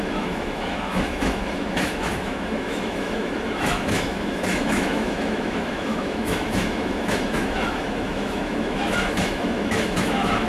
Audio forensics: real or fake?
fake